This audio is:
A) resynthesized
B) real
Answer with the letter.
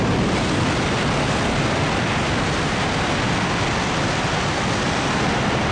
B